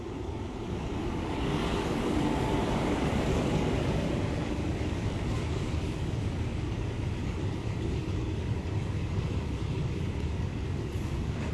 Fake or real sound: fake